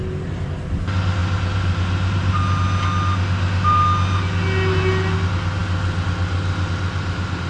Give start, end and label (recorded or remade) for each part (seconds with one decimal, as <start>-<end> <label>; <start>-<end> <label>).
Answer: 0.0-1.2 recorded; 1.2-2.3 remade; 2.3-7.5 recorded